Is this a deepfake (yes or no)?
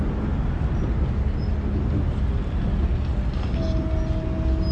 no